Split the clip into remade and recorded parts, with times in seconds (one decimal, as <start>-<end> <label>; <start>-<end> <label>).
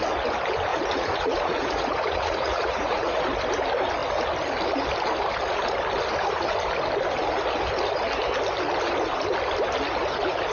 0.0-0.7 recorded; 0.7-3.2 remade; 3.2-10.5 recorded